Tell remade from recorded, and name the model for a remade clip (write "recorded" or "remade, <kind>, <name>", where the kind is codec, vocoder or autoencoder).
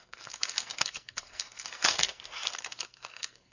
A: remade, codec, SNAC